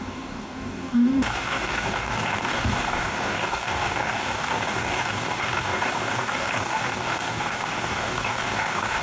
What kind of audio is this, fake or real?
fake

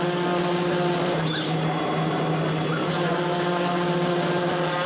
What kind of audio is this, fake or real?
real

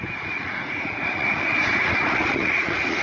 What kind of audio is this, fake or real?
fake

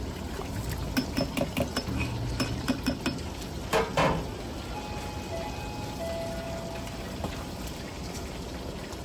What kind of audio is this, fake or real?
real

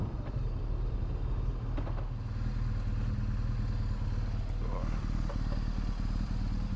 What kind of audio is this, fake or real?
real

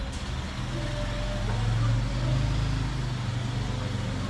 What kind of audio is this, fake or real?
real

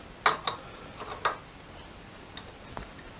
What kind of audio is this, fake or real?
real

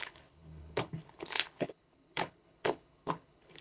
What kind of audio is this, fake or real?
fake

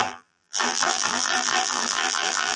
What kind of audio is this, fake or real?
fake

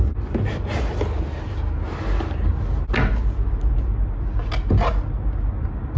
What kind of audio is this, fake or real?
real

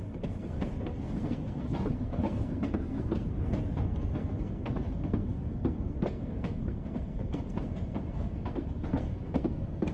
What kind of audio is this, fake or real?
fake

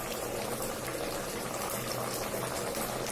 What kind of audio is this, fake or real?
real